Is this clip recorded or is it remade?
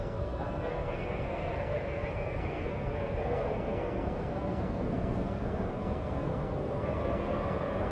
remade